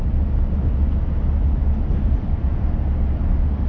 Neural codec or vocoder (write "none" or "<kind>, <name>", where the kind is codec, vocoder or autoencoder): none